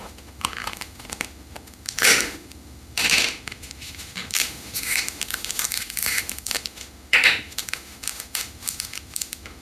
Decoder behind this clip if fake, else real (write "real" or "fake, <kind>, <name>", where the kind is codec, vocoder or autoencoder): fake, autoencoder, DAC-VAE